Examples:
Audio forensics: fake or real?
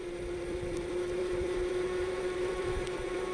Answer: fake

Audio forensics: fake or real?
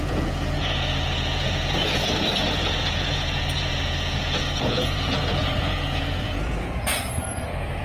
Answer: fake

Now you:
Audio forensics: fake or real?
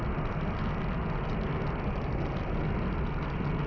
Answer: real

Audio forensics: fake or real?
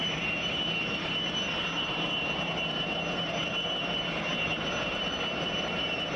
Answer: fake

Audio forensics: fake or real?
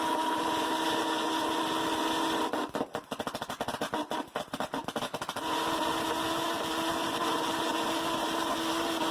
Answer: real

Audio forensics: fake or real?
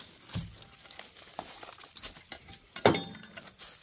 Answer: real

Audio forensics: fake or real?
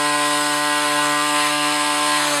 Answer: fake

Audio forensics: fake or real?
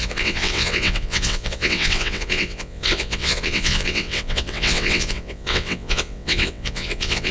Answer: fake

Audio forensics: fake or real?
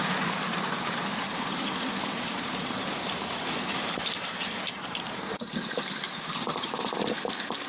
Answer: fake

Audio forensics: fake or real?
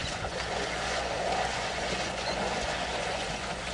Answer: fake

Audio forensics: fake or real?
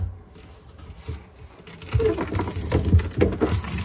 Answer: real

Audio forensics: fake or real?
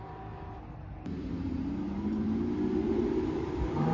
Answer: fake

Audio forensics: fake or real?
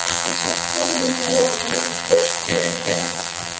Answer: fake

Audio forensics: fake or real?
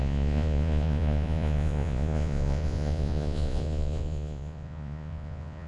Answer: fake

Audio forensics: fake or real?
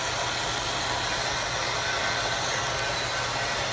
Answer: real